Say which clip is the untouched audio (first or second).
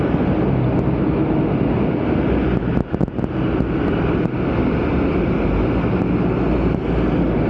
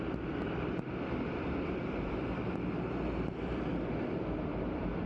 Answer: first